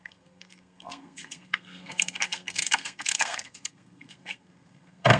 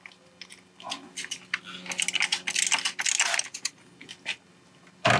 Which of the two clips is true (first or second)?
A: second